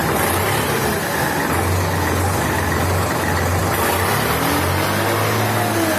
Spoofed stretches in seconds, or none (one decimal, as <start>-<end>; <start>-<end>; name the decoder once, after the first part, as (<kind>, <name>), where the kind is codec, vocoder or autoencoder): none

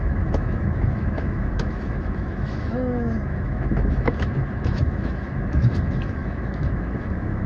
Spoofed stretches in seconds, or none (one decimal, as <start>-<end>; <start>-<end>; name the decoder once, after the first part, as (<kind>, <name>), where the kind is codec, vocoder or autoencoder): 0.0-7.5 (autoencoder, DAC-VAE)

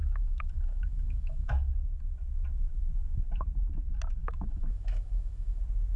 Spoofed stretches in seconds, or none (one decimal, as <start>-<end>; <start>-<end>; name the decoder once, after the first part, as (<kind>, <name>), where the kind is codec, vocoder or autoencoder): 0.0-1.7 (autoencoder, DAC-VAE); 4.2-5.6

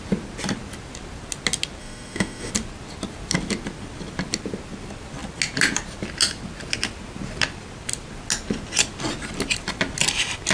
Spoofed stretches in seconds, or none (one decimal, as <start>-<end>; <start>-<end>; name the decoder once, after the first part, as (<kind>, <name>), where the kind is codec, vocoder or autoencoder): 1.8-2.5 (autoencoder, DAC-VAE)

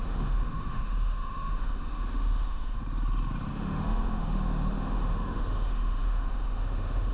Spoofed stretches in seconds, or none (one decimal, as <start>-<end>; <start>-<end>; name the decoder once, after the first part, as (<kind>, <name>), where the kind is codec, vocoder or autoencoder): 0.0-2.8 (autoencoder, DAC-VAE); 3.5-7.1